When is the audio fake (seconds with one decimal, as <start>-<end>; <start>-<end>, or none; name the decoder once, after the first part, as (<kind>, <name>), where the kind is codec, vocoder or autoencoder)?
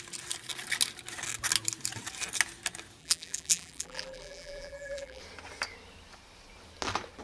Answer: 3.0-5.2 (vocoder, BigVGAN v2)